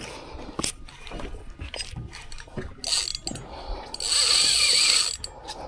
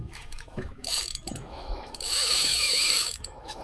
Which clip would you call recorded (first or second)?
first